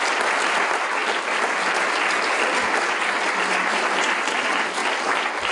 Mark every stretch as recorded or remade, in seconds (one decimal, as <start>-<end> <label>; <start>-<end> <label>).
0.0-5.5 recorded